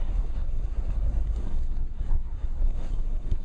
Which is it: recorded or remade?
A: remade